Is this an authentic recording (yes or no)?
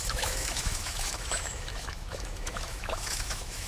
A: no